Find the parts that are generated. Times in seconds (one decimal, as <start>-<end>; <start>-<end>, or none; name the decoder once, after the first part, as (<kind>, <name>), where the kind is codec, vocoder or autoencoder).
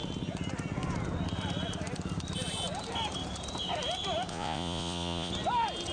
4.3-5.3 (vocoder, Vocos)